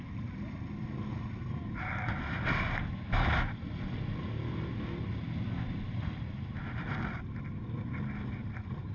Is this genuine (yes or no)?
yes